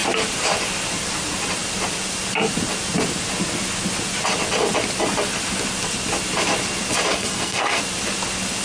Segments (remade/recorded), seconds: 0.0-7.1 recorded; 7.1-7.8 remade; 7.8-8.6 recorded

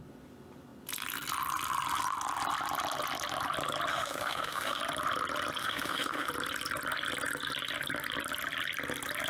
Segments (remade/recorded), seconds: 0.0-3.9 recorded; 3.9-4.8 remade; 4.8-5.6 recorded; 5.6-6.3 remade; 6.3-9.3 recorded